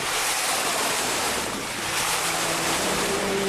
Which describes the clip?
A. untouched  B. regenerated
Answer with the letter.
B